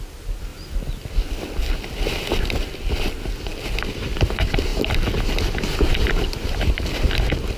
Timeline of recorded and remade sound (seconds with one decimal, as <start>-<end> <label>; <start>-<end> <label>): 0.0-7.6 recorded